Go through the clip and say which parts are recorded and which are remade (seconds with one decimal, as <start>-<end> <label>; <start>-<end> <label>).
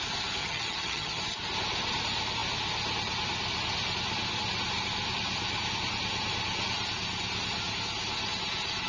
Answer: 0.0-0.4 recorded; 0.4-1.2 remade; 1.2-8.9 recorded